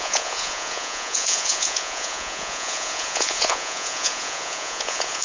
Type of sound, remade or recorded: remade